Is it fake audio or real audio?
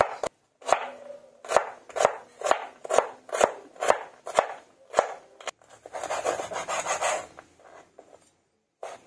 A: real